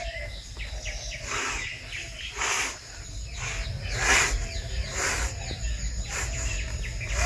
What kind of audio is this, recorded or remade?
recorded